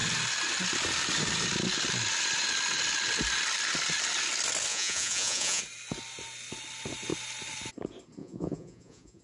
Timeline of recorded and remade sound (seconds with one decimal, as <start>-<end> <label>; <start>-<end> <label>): 0.0-4.7 recorded; 4.7-5.6 remade; 5.6-8.2 recorded; 8.2-9.2 remade